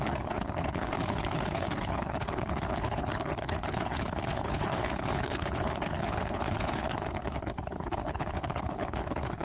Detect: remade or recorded remade